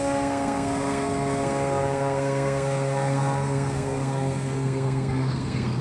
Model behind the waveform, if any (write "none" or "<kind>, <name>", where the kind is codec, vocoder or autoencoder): codec, SNAC